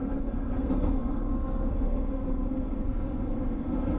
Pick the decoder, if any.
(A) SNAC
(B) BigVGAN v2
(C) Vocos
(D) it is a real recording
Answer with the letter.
A